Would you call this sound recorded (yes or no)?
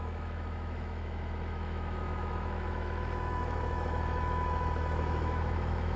no